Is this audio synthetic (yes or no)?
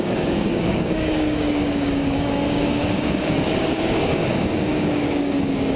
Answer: yes